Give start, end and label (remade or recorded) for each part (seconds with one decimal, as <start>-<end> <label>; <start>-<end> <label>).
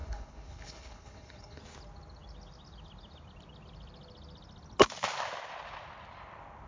0.0-1.6 remade; 1.6-6.7 recorded